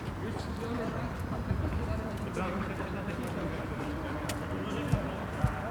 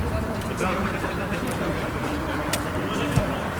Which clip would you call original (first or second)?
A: first